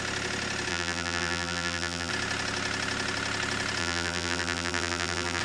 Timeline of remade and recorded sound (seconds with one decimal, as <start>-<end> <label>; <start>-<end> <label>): 0.0-0.7 recorded; 0.7-2.1 remade; 2.1-3.8 recorded; 3.8-5.4 remade